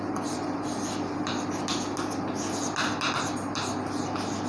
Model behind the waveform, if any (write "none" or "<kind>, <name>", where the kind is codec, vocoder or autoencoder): none